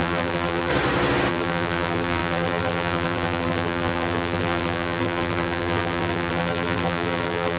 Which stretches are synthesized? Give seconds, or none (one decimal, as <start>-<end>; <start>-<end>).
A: 0.0-0.7; 1.3-7.6